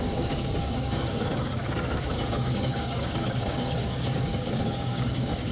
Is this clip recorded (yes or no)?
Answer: no